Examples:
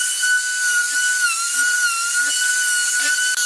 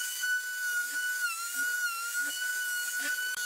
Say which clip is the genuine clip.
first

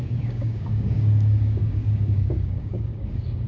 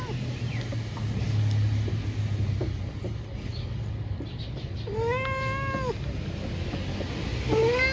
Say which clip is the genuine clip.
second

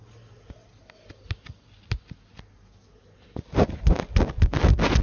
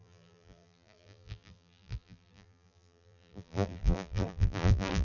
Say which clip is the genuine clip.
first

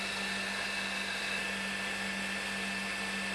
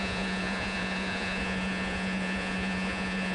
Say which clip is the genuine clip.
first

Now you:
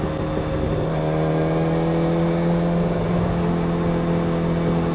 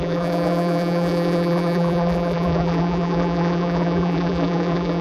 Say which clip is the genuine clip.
first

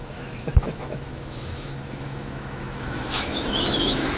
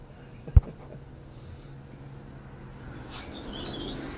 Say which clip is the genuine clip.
second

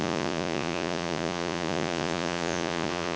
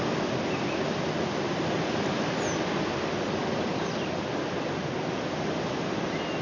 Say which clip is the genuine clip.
second